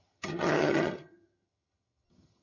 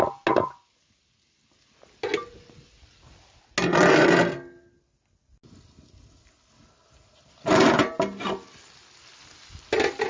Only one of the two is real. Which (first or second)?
second